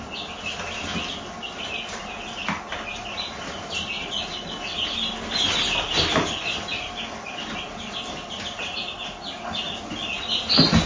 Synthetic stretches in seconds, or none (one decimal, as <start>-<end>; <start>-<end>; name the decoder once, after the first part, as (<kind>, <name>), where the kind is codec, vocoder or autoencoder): none